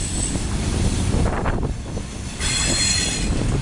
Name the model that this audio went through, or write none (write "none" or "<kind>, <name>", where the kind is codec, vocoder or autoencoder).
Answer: vocoder, BigVGAN v2